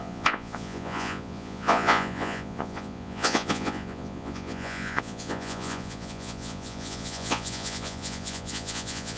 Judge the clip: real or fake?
fake